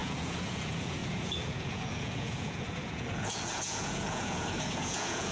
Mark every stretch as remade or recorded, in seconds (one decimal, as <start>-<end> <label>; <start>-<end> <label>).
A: 0.0-5.3 remade